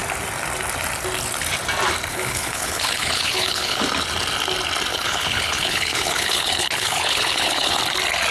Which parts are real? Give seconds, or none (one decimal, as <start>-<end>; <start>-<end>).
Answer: 0.0-2.1; 3.8-4.9; 7.8-8.3